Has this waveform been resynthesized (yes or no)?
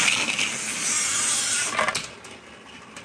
no